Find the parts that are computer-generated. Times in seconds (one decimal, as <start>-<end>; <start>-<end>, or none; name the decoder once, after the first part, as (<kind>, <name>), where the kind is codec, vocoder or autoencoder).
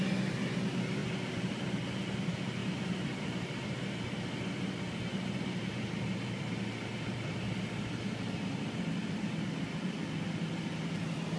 5.1-9.6 (vocoder, BigVGAN v2)